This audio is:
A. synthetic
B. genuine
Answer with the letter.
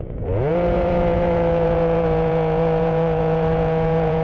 A